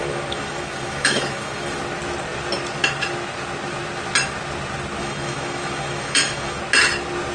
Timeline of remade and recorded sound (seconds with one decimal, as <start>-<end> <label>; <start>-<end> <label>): 0.0-1.8 remade; 1.8-5.0 recorded; 5.0-6.6 remade; 6.6-7.3 recorded